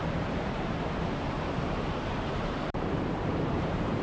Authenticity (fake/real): fake